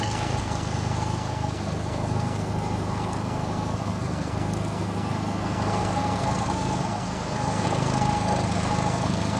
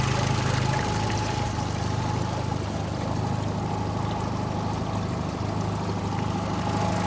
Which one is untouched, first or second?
second